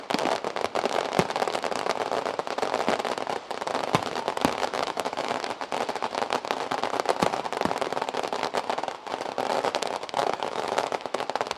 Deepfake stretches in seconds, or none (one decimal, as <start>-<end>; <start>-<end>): 4.6-5.3; 10.2-11.2

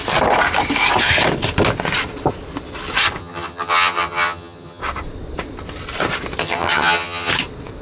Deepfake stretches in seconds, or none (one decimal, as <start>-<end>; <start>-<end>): 3.2-4.8; 6.4-7.3

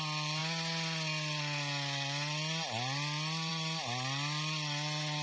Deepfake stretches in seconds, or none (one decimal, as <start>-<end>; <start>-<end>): none

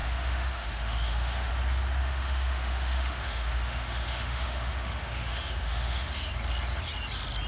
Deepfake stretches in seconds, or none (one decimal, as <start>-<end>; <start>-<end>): 0.0-1.5; 2.0-6.3

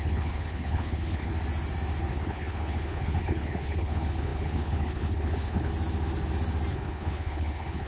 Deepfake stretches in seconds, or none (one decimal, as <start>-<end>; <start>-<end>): 0.0-1.3; 2.1-5.7; 6.7-7.9